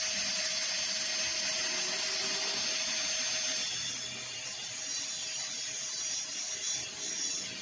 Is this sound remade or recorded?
recorded